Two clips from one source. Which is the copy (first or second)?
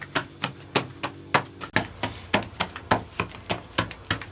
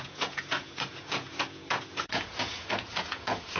second